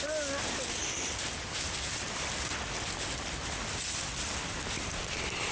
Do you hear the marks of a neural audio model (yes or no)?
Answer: no